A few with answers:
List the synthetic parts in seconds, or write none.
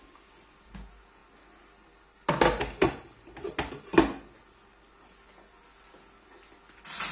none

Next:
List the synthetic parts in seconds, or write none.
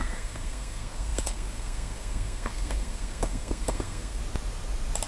0.0-4.2 (codec, SNAC)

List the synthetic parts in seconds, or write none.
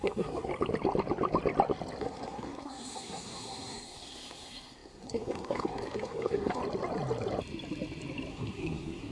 0.0-0.5 (codec, SNAC); 2.0-6.6; 8.3-9.1